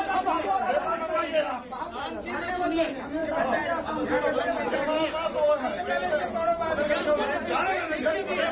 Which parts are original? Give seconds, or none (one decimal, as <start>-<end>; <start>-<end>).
0.0-8.5